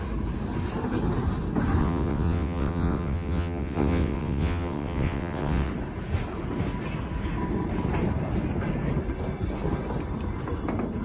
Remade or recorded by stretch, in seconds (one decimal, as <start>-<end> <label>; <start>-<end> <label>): 0.0-1.8 recorded; 1.8-5.7 remade; 5.7-11.0 recorded